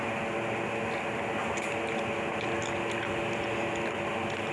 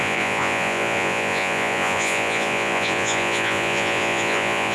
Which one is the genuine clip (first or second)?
first